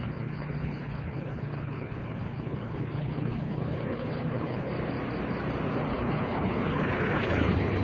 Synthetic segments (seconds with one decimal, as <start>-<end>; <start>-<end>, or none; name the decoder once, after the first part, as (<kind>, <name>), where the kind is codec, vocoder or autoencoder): 0.0-4.7 (codec, HILCodec); 5.9-7.8